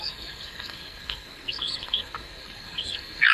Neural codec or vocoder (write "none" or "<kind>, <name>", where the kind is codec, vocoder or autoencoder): codec, SNAC